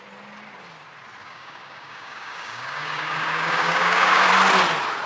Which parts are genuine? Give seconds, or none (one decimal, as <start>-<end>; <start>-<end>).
0.0-1.2; 4.3-5.1